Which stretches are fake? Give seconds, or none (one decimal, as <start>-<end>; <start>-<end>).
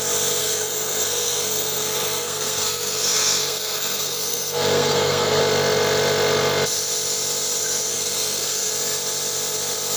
0.4-5.4; 7.9-8.7